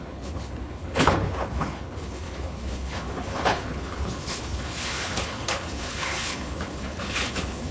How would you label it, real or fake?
fake